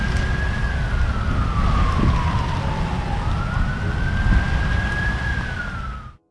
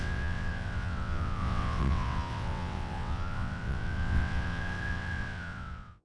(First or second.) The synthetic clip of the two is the second